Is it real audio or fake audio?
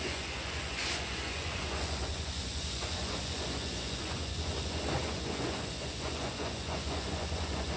fake